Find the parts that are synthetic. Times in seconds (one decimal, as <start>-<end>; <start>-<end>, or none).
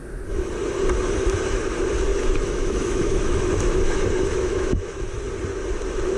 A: 2.1-5.0